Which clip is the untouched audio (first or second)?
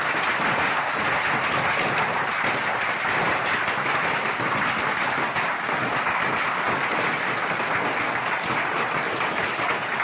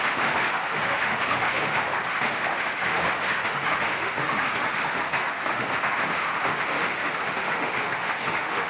first